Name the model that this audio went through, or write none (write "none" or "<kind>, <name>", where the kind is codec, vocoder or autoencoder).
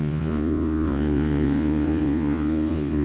vocoder, Vocos